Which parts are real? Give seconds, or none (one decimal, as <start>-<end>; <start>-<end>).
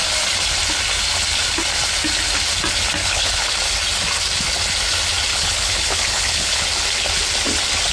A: 0.0-3.0; 3.5-5.3; 6.6-7.9